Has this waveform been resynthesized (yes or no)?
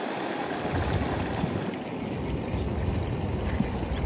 no